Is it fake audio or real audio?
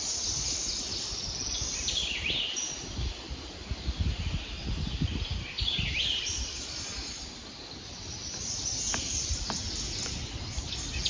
real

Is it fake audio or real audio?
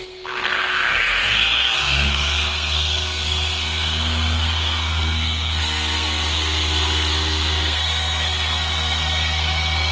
fake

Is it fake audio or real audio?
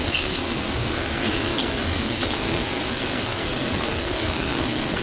fake